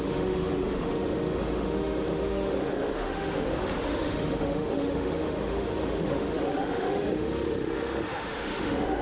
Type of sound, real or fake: fake